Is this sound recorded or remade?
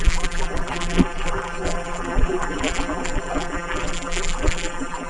remade